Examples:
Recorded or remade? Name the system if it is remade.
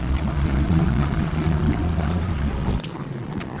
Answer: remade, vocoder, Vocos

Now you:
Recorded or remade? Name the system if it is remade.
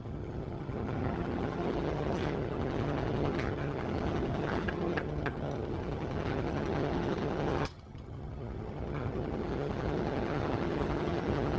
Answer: remade, vocoder, HiFi-GAN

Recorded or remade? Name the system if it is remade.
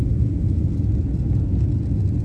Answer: recorded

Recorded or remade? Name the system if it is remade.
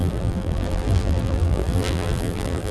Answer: remade, vocoder, BigVGAN v2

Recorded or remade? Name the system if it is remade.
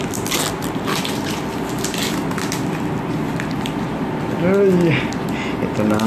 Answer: recorded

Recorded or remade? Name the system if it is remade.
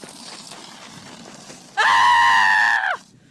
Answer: recorded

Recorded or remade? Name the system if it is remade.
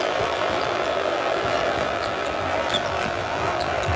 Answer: remade, vocoder, BigVGAN v2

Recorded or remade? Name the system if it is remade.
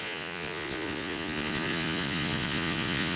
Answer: remade, vocoder, Vocos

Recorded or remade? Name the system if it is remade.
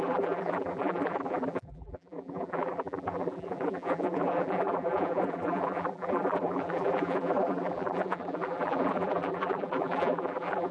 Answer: remade, vocoder, BigVGAN v2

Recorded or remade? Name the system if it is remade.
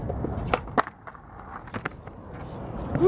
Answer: recorded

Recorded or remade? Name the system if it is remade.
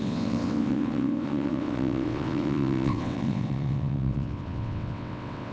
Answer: remade, vocoder, WaveNeXt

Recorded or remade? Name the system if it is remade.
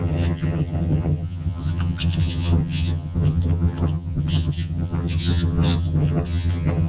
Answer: remade, vocoder, HiFi-GAN